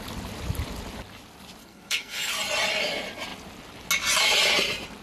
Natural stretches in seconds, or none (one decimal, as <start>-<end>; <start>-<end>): 0.0-1.6; 2.3-5.0